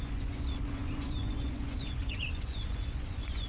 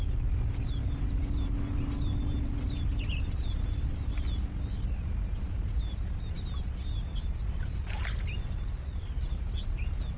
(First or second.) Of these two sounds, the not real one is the first